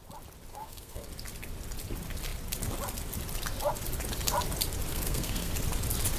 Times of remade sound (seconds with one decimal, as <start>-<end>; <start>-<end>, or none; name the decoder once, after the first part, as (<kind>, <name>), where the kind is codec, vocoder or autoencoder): 0.5-1.1 (codec, SNAC); 4.9-5.5